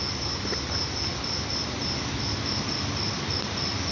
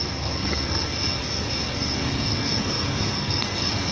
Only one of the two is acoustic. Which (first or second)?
first